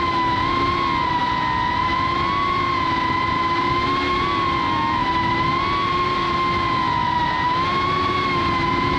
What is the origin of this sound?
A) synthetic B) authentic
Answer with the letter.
B